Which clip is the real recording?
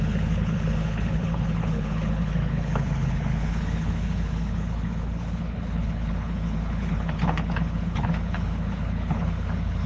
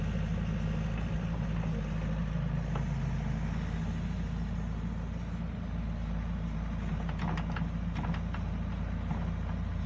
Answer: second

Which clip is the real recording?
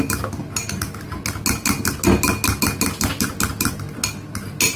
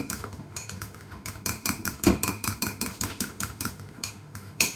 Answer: first